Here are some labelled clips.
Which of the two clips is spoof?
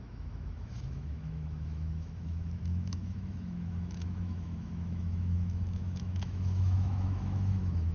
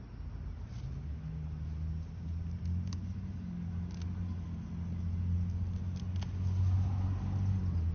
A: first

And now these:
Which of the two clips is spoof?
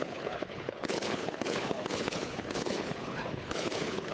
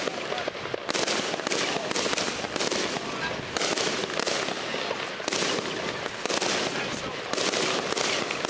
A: first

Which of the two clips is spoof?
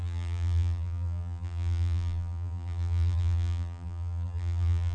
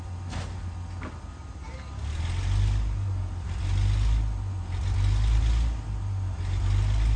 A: first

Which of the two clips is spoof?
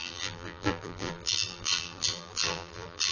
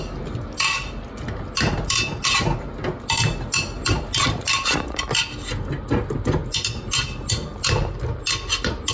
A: first